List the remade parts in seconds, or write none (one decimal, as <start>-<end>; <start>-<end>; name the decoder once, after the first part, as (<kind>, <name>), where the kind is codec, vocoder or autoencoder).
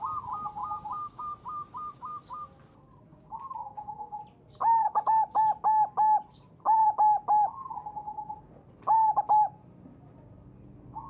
0.6-1.2 (codec, DAC); 3.1-4.1; 4.8-5.4; 7.6-8.3